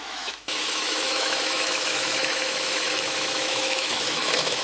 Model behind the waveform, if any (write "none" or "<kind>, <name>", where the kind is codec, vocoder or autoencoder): autoencoder, DAC-VAE